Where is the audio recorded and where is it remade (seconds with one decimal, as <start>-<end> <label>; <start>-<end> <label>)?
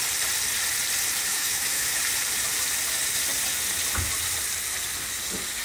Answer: 0.0-1.3 recorded; 1.3-2.0 remade; 2.0-5.6 recorded